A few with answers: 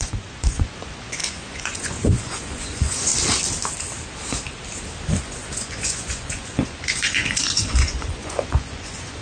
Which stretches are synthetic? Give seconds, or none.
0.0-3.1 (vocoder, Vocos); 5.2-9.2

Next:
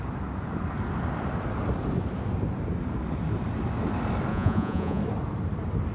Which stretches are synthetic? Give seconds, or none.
4.3-5.0 (vocoder, Vocos)

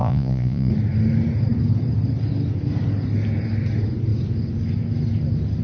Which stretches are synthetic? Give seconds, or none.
0.0-0.7 (vocoder, Vocos)

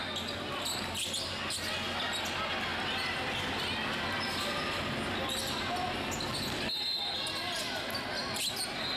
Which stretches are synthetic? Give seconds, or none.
none

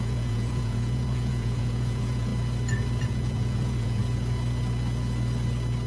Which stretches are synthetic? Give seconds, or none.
0.0-2.3 (vocoder, Vocos); 3.0-4.0